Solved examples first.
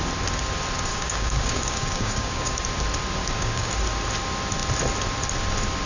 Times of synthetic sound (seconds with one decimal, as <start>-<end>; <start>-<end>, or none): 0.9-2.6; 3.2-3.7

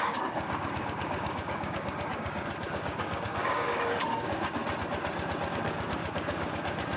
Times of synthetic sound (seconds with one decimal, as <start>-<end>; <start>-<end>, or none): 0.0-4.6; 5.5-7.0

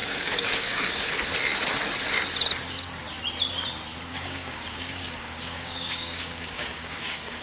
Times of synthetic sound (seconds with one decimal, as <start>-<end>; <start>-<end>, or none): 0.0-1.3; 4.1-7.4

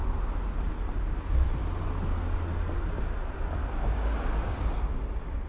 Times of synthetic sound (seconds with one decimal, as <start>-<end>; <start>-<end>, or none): 3.6-4.7